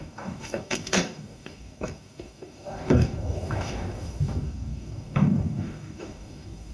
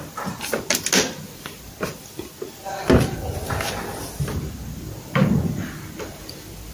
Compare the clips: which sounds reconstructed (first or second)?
first